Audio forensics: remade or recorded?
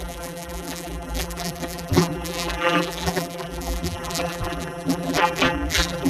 remade